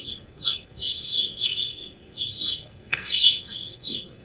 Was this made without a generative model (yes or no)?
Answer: no